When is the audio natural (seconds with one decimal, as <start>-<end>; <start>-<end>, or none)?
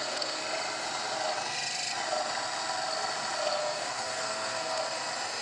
0.4-3.6; 4.8-5.4